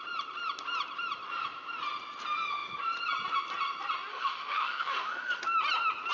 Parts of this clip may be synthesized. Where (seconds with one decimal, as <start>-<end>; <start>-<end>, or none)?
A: 4.1-5.4